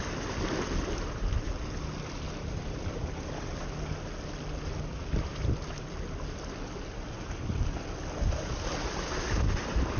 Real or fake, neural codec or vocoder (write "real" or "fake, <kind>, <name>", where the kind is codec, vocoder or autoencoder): real